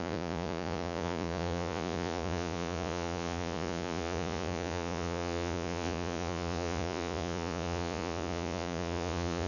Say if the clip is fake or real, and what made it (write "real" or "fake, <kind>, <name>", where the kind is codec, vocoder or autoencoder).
fake, vocoder, Vocos